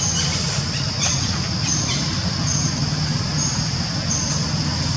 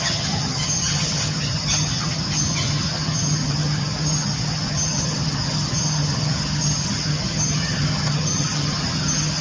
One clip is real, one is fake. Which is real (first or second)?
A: first